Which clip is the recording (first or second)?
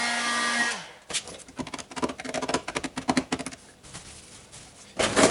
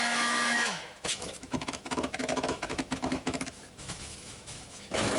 first